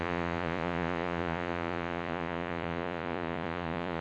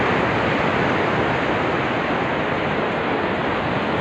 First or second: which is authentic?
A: second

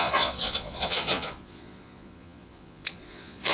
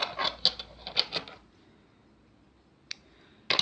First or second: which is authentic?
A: second